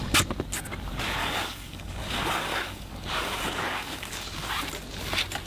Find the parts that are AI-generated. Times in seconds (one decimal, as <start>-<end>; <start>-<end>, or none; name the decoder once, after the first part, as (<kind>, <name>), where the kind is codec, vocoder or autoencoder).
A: 1.2-4.5 (codec, DAC)